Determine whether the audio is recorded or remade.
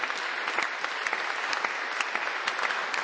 recorded